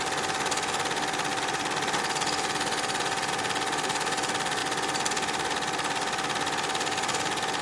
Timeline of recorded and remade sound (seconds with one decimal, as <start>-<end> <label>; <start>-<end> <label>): 0.0-7.6 recorded

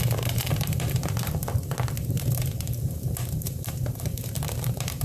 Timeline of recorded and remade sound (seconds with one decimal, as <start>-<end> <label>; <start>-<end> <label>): 0.0-1.4 remade; 1.4-2.0 recorded; 2.0-5.0 remade

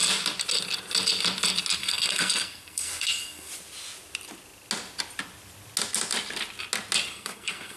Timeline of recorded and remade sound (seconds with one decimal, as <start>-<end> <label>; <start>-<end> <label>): 0.0-1.8 recorded; 1.8-3.5 remade; 3.5-7.1 recorded; 7.1-7.8 remade